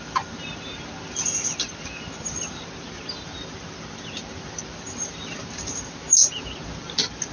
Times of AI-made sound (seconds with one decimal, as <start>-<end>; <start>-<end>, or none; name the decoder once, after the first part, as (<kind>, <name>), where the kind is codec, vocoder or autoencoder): none